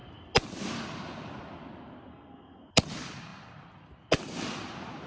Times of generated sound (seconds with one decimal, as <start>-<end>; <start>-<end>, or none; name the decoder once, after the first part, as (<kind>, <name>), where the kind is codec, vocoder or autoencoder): 2.1-2.6 (codec, SNAC)